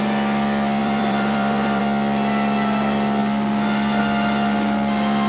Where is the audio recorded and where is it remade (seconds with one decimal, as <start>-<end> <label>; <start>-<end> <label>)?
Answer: 0.0-0.8 recorded; 0.8-1.8 remade; 1.8-5.3 recorded